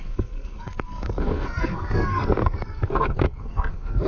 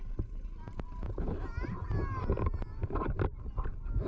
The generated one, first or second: first